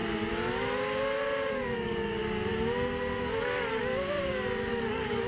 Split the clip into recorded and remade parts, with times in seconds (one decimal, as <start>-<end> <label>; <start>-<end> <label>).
0.0-1.5 recorded; 1.5-2.2 remade; 2.2-4.7 recorded; 4.7-5.3 remade